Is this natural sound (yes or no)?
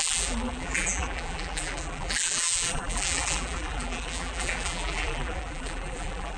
no